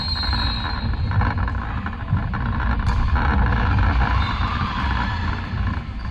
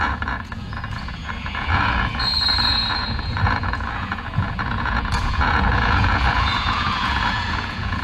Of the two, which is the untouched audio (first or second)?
first